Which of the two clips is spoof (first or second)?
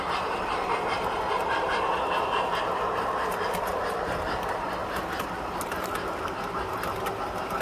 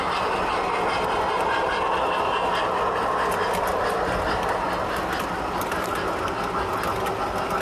first